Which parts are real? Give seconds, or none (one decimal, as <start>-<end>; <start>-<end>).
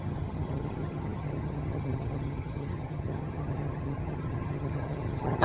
none